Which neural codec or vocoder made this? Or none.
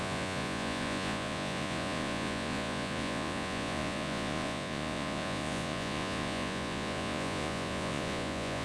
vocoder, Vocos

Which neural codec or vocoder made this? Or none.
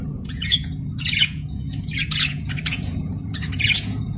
vocoder, Vocos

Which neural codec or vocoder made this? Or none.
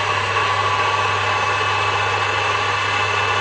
none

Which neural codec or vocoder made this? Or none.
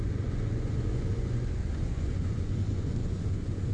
vocoder, Vocos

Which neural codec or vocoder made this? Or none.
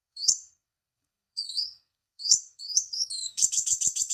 codec, SNAC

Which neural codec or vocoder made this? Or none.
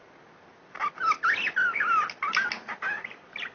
none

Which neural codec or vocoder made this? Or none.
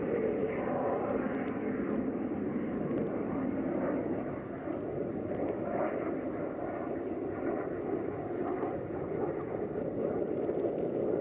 none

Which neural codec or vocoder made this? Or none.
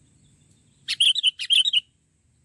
vocoder, BigVGAN v2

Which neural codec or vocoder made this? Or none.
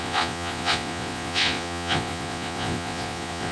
vocoder, Vocos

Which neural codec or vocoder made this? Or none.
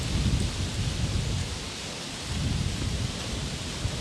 none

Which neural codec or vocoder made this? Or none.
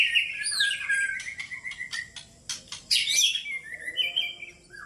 none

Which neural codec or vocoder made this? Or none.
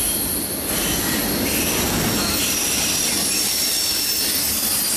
none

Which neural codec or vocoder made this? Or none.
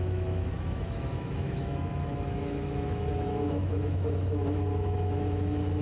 autoencoder, DAC-VAE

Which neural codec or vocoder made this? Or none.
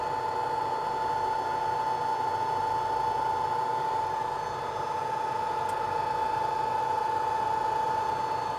none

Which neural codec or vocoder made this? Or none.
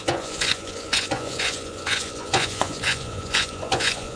vocoder, Vocos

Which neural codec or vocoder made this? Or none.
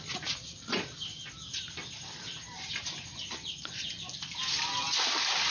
none